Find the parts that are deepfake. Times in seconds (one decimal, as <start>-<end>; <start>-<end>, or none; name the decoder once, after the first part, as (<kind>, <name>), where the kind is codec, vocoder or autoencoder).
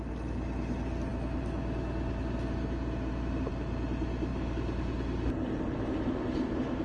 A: none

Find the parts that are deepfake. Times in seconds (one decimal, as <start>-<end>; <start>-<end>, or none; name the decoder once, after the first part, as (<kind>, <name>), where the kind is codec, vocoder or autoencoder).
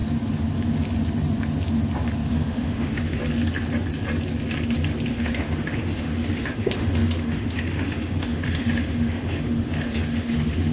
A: 2.3-3.2 (autoencoder, DAC-VAE); 5.1-10.7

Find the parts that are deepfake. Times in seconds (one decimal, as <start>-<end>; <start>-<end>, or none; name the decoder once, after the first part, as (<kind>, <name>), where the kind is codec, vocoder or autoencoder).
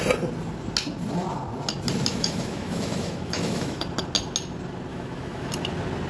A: 2.1-3.8 (autoencoder, DAC-VAE); 4.9-5.5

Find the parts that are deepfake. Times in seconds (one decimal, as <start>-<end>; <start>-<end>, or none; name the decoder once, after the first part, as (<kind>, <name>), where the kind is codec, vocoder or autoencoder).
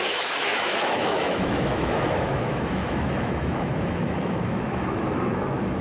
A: 0.0-5.8 (autoencoder, DAC-VAE)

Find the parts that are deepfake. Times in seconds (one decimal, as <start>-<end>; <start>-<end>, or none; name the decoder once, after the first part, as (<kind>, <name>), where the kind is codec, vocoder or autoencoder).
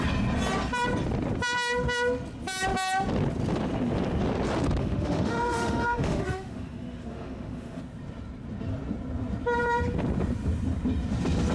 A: 4.8-7.8 (autoencoder, DAC-VAE)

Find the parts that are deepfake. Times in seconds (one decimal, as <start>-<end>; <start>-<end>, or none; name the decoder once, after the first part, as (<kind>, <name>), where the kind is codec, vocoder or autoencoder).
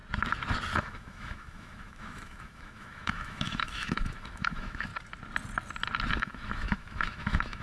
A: 0.8-4.9 (autoencoder, DAC-VAE); 6.1-7.6